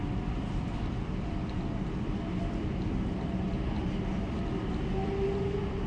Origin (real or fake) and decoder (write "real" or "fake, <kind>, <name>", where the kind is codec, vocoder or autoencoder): fake, vocoder, BigVGAN v2